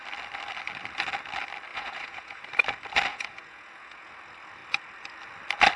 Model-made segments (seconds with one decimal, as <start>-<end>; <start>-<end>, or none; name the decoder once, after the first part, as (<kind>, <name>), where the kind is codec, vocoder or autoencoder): 1.7-2.4 (vocoder, Vocos); 3.1-4.1